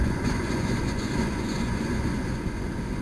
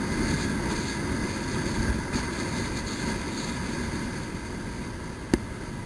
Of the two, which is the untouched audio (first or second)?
second